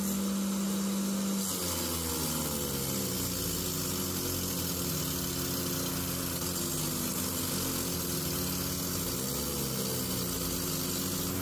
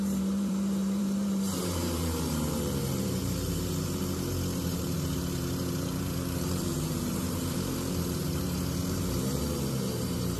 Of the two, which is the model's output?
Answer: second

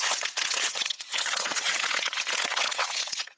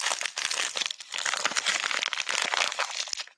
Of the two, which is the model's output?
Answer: first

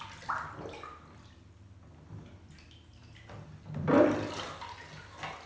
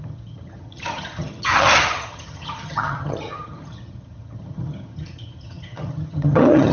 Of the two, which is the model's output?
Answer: second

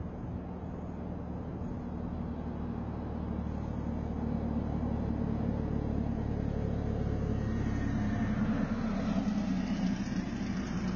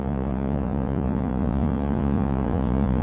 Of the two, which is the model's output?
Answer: second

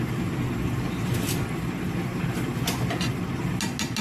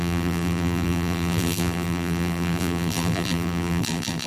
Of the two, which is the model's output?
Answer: second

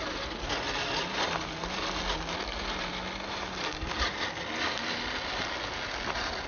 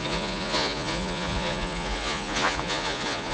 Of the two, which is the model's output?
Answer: second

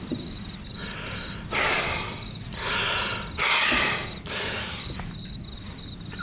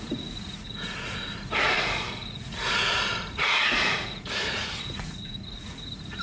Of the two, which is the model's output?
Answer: second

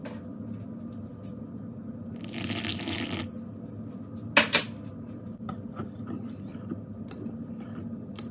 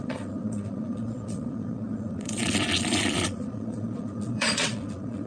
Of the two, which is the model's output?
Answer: second